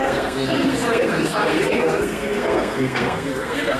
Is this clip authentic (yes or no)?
no